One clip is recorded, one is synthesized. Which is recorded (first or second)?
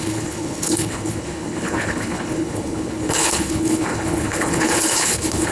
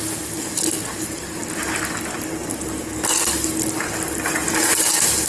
second